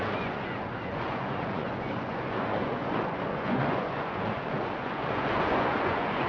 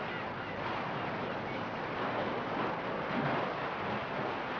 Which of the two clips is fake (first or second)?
first